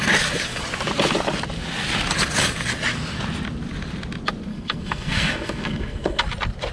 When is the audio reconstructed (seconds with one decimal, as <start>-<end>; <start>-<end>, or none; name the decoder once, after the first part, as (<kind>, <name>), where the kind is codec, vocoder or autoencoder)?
4.5-6.2 (codec, SNAC)